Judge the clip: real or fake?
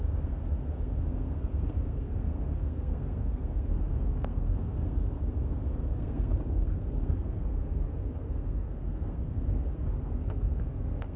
fake